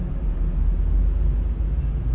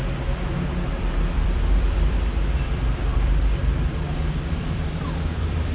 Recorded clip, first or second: first